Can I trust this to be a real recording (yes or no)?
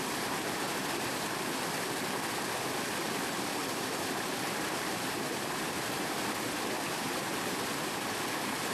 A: no